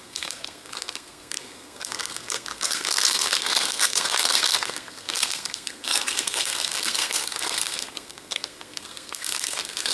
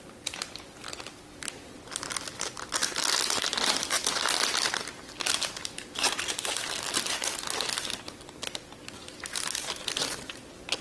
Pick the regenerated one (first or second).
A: first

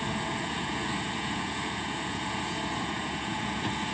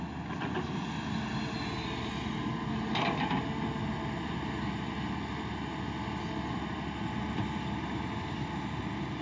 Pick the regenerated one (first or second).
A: first